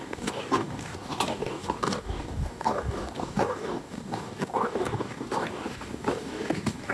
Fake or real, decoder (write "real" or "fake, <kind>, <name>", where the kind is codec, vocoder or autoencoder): fake, codec, DAC